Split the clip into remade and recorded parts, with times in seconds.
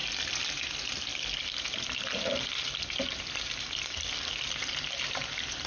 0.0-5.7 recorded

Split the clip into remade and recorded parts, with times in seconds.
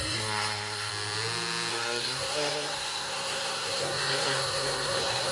0.0-0.9 remade; 0.9-1.7 recorded; 1.7-5.3 remade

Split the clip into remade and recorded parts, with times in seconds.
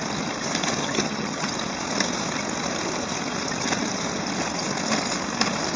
0.0-0.8 recorded; 0.8-1.5 remade; 1.5-5.8 recorded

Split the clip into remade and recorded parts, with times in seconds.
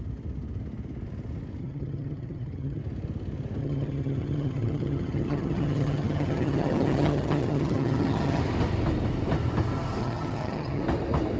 0.0-1.6 recorded; 1.6-2.8 remade; 2.8-3.6 recorded; 3.6-8.4 remade; 8.4-10.0 recorded; 10.0-10.8 remade; 10.8-11.4 recorded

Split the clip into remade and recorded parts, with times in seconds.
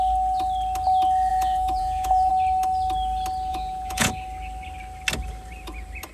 0.0-1.3 recorded; 1.3-2.3 remade; 2.3-3.5 recorded; 3.5-4.1 remade; 4.1-6.1 recorded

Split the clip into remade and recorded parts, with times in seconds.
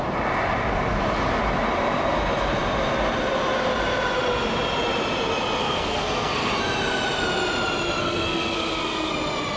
0.0-5.6 recorded; 5.6-6.5 remade; 6.5-8.0 recorded; 8.0-9.1 remade; 9.1-9.6 recorded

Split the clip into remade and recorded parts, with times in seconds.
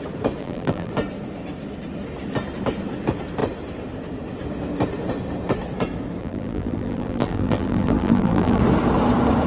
0.0-0.4 recorded; 0.4-0.9 remade; 0.9-6.2 recorded; 6.2-8.6 remade; 8.6-9.5 recorded